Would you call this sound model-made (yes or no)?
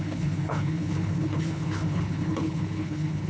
yes